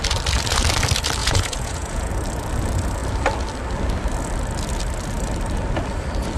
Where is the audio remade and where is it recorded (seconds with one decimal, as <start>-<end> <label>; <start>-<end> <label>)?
0.0-1.2 recorded; 1.2-2.1 remade; 2.1-6.4 recorded